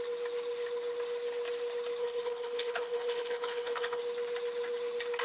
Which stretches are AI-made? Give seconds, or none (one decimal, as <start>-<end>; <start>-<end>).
2.0-4.0